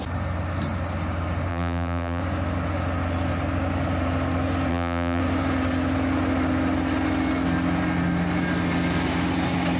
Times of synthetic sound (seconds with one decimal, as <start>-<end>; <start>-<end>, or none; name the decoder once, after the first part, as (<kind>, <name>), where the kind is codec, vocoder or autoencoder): 1.5-2.2 (vocoder, BigVGAN v2); 4.7-5.2